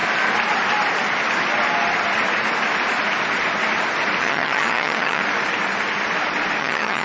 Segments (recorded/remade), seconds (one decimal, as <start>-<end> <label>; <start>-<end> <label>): 0.0-4.2 recorded; 4.2-5.2 remade; 5.2-6.6 recorded; 6.6-7.0 remade